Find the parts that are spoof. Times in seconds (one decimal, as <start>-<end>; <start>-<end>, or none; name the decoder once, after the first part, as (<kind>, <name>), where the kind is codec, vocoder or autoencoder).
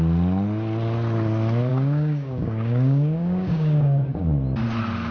1.7-4.2 (codec, DAC)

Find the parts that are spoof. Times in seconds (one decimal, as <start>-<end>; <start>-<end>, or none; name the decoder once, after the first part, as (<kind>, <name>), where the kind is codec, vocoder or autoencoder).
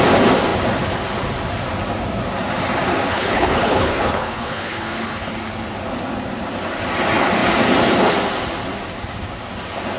3.1-5.3 (codec, HILCodec)